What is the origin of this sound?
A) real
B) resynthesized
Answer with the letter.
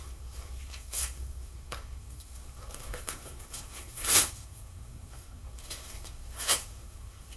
B